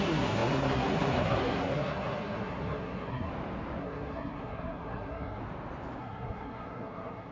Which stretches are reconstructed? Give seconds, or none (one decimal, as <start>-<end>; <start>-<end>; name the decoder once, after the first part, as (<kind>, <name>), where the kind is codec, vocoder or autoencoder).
0.0-3.3 (codec, SNAC); 3.8-5.4; 6.0-7.3